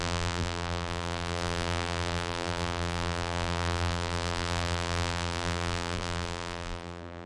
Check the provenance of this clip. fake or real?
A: fake